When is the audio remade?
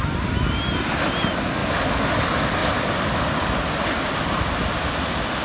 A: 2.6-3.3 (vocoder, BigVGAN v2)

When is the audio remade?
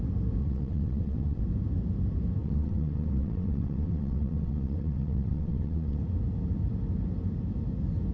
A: 0.4-1.4 (vocoder, WaveNeXt); 2.4-6.0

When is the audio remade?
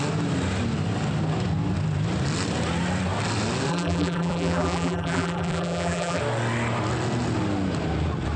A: 3.7-6.2 (vocoder, BigVGAN v2)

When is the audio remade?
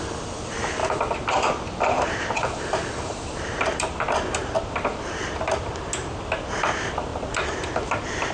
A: 0.8-5.3 (vocoder, BigVGAN v2)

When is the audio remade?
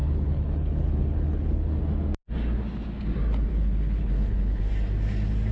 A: 0.0-1.8 (codec, HILCodec); 3.5-4.6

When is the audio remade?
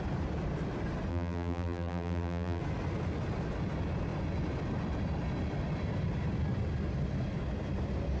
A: 1.1-2.6 (vocoder, BigVGAN v2)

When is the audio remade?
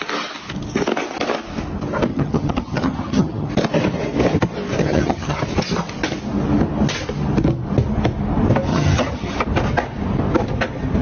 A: 2.1-3.5 (vocoder, HiFi-GAN); 4.8-5.4; 8.7-9.3